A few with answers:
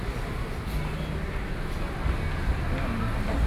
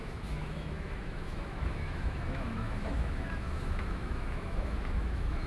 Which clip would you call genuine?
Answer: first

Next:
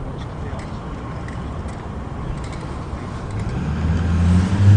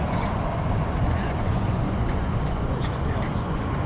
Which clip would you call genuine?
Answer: first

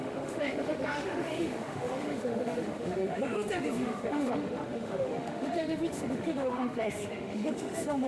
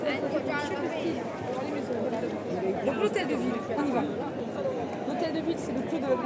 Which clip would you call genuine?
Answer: second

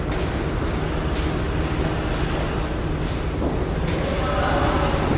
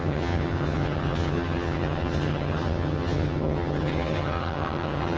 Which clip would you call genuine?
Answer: first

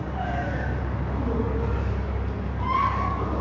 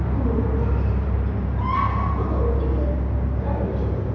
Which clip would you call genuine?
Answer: second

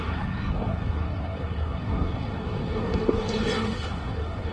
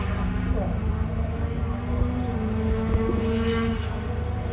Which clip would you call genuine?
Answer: second